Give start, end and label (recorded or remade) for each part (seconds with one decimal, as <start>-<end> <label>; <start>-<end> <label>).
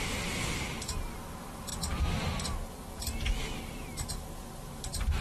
0.0-5.2 recorded